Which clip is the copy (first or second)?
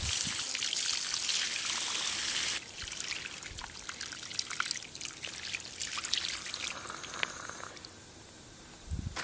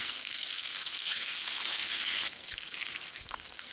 second